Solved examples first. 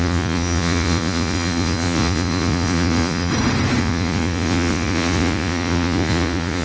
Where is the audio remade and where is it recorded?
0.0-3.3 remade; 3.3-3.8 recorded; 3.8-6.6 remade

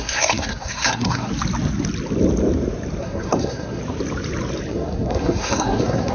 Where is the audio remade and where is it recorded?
0.0-1.3 remade; 1.3-3.0 recorded; 3.0-3.8 remade; 3.8-4.7 recorded; 4.7-6.1 remade

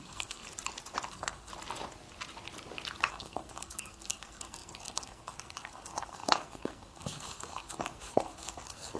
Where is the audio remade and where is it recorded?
0.0-0.4 remade; 0.4-1.1 recorded; 1.1-1.5 remade; 1.5-3.1 recorded; 3.1-9.0 remade